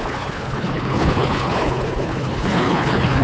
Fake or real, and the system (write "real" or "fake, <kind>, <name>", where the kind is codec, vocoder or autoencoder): fake, codec, HILCodec